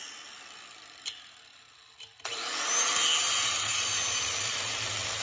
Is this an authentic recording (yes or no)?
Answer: yes